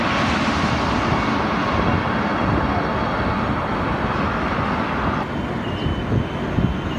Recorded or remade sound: recorded